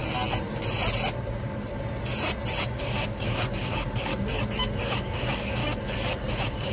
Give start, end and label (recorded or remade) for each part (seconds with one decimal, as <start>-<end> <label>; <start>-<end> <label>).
0.0-2.6 recorded; 2.6-4.1 remade; 4.1-4.9 recorded; 4.9-5.6 remade; 5.6-6.3 recorded; 6.3-6.7 remade